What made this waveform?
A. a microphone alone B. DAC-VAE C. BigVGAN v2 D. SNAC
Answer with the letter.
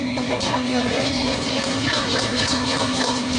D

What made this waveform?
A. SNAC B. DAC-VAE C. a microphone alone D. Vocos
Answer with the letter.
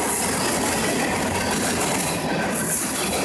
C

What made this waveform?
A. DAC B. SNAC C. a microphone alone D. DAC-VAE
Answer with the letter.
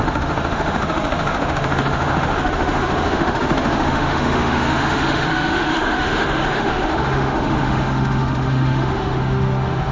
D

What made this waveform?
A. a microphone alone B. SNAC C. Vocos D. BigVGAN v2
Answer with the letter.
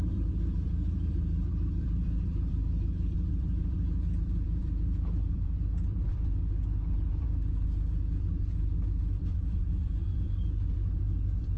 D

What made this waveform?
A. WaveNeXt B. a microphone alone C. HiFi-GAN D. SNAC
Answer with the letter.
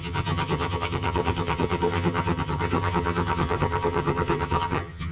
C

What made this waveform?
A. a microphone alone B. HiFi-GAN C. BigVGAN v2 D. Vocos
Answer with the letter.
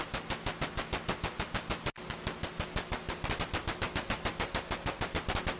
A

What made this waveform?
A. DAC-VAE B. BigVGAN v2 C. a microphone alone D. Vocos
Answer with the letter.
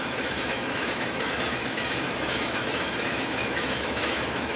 A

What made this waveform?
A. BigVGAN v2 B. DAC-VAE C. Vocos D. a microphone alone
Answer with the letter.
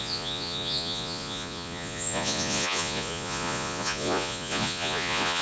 C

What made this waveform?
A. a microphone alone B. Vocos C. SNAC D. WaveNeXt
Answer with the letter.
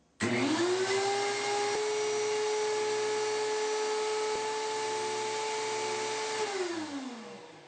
A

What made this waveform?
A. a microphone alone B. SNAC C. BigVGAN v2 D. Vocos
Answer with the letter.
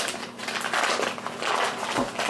A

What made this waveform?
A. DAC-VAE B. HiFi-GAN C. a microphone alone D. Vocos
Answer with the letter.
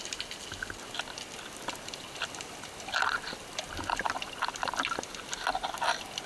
C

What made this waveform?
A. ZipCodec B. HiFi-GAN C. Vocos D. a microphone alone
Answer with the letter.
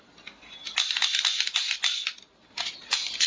D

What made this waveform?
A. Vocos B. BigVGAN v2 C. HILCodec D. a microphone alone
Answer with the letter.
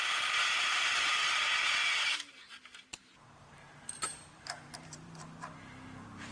B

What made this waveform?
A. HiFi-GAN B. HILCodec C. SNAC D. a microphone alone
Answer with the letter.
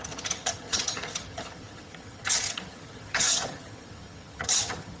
A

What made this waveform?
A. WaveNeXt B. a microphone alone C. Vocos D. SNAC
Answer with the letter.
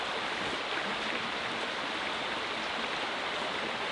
B